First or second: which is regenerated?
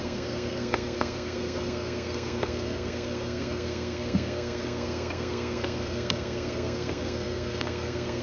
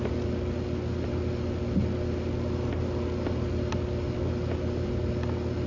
first